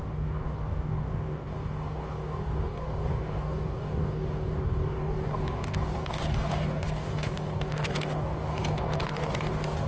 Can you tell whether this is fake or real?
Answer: fake